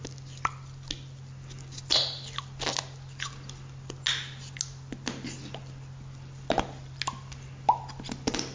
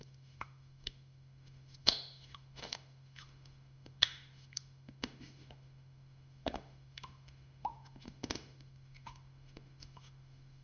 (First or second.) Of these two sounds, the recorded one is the first